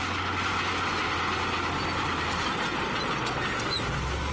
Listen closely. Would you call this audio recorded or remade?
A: recorded